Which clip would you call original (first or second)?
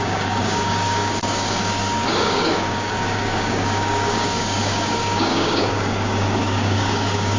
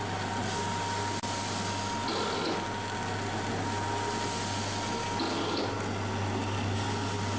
second